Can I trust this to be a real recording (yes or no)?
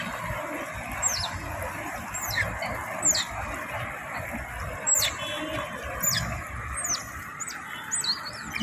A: yes